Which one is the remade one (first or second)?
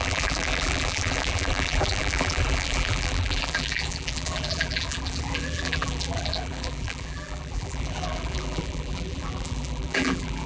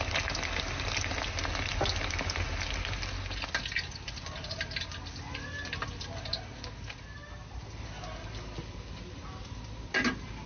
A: first